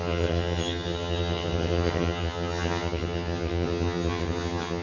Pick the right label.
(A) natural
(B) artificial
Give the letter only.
B